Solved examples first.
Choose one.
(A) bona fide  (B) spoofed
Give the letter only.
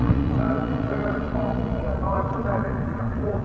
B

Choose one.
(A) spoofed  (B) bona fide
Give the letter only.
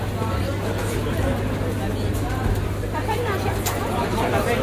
B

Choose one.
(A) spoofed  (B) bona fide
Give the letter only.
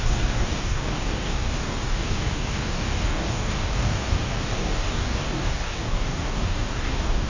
A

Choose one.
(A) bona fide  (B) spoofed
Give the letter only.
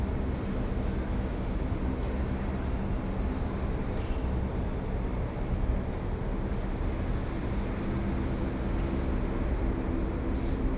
A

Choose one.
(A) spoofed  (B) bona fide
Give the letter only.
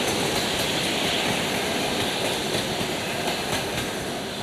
B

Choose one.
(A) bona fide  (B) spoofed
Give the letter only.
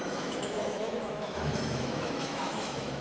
B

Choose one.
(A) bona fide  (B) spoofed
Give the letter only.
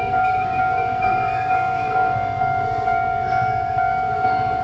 B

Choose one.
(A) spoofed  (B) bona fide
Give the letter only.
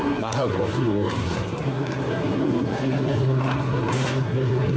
A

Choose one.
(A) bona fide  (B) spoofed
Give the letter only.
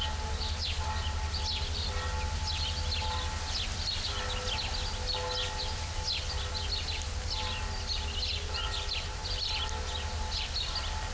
A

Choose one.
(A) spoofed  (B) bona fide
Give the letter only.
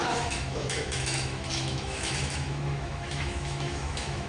A